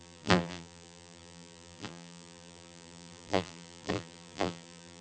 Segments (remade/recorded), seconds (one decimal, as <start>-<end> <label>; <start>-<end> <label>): 0.0-5.0 remade